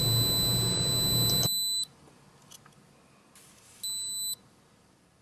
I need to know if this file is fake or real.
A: real